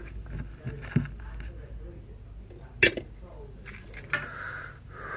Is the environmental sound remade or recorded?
recorded